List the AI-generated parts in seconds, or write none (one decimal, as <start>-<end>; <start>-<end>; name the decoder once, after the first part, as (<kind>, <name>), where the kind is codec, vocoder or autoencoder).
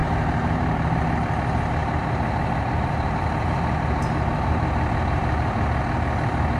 0.0-1.0 (vocoder, BigVGAN v2); 1.8-5.8